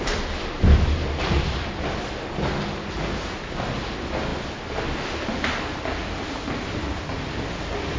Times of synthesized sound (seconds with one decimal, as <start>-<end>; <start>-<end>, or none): none